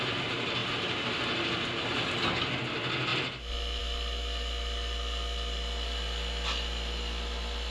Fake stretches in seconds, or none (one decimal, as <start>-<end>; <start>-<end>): none

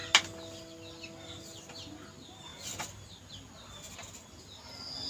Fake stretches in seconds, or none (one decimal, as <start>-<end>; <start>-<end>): none

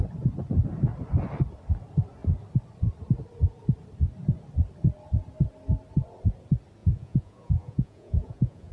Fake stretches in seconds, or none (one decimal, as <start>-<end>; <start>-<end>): 6.8-8.7

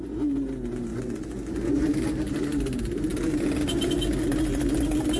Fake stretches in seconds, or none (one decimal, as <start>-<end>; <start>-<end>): 0.9-1.9

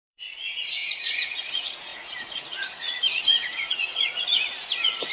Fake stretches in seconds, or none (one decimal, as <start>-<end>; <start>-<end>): 0.0-5.1

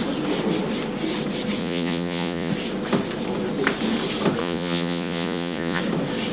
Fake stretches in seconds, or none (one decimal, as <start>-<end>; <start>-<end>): 1.6-2.5; 4.4-5.8